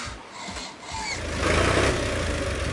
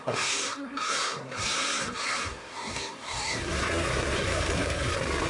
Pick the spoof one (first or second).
second